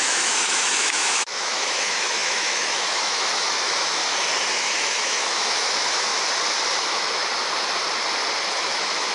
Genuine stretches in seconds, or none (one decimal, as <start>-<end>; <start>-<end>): 4.0-4.5; 6.1-6.8; 7.2-8.5